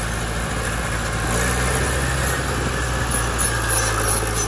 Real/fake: real